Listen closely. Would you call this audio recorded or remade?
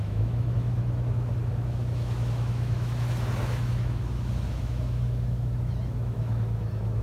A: remade